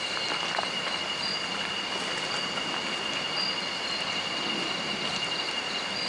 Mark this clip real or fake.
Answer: real